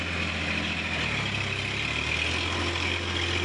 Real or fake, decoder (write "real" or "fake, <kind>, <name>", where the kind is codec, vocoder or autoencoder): real